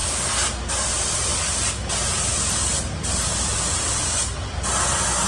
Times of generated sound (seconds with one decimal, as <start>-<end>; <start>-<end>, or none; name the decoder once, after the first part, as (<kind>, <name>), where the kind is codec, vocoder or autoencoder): none